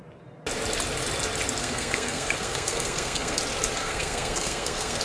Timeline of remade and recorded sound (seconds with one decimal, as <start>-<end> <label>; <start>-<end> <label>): 0.0-1.6 recorded; 1.6-3.4 remade; 3.4-3.8 recorded; 3.8-5.0 remade